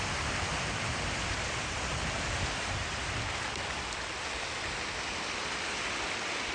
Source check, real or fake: real